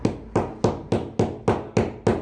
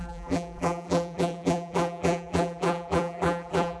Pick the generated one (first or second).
second